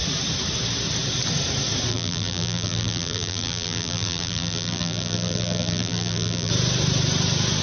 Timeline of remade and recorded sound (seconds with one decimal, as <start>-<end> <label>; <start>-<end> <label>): 0.0-1.9 recorded; 1.9-6.5 remade; 6.5-7.6 recorded